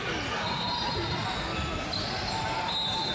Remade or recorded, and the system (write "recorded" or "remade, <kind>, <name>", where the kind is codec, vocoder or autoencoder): recorded